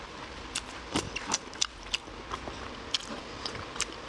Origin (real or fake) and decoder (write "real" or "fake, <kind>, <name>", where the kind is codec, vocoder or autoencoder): real